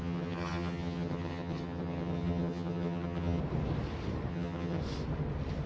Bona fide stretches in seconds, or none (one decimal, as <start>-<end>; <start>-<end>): 3.4-4.3; 4.8-5.7